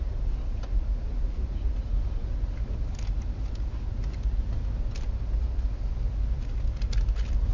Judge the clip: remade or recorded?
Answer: recorded